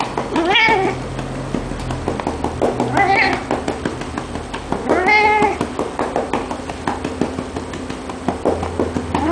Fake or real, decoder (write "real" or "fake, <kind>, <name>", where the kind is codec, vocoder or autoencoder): real